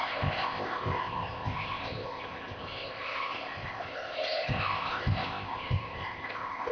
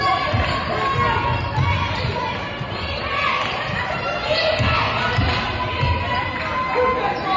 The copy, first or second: first